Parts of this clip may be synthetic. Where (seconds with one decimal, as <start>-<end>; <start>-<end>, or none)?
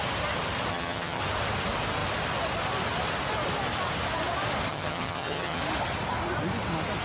0.7-1.2; 4.7-5.6